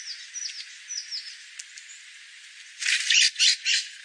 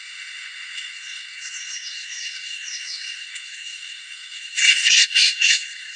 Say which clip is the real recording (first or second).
first